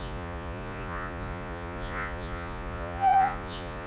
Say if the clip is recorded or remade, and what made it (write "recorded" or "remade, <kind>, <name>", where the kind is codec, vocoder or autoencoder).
remade, vocoder, Vocos